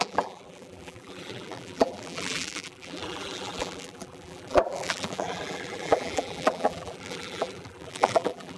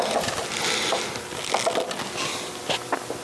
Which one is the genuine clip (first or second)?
second